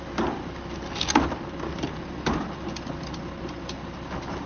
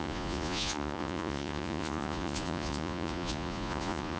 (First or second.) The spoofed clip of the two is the second